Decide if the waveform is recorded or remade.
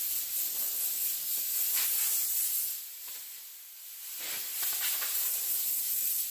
recorded